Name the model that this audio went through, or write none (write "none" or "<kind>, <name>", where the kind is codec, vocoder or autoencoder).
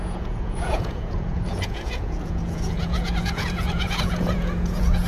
vocoder, Vocos